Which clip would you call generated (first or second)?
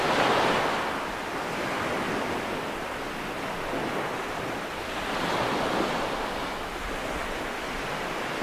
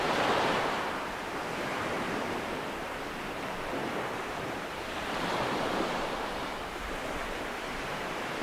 second